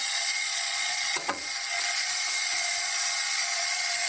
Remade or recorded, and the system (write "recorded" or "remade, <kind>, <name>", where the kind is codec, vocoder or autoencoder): remade, vocoder, Vocos